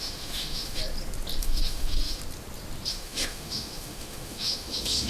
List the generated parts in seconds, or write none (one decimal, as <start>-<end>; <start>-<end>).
0.0-0.8; 1.4-2.2; 2.9-5.1